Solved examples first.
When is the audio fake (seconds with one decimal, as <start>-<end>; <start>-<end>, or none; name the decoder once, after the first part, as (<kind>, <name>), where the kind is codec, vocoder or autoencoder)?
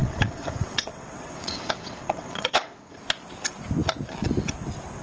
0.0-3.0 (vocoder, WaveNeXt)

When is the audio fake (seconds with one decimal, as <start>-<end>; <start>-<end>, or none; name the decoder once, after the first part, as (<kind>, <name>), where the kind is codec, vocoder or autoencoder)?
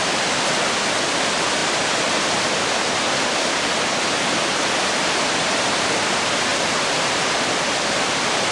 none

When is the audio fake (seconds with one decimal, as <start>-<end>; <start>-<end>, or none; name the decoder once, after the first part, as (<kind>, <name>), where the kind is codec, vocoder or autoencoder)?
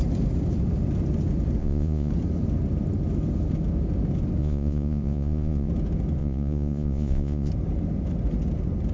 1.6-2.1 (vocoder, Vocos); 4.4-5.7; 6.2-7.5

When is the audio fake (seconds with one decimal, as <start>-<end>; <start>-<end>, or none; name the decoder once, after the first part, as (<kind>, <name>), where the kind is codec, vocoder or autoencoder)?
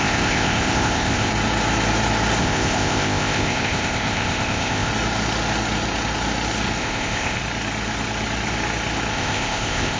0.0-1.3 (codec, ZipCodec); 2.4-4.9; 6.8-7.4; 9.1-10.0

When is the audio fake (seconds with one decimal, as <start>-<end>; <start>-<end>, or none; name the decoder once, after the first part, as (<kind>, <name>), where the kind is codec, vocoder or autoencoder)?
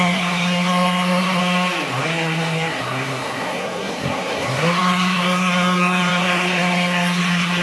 0.0-1.4 (codec, SNAC); 2.0-7.6